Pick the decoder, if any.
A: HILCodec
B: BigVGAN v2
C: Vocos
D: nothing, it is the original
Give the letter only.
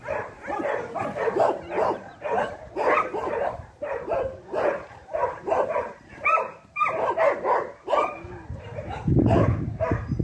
B